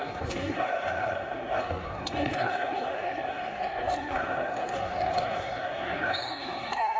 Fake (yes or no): yes